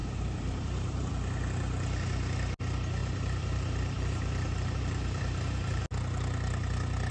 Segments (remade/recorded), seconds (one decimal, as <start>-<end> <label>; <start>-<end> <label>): 0.0-1.1 remade; 1.1-3.0 recorded; 3.0-5.8 remade; 5.8-7.1 recorded